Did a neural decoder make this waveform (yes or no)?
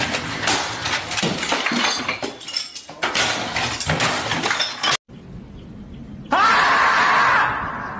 no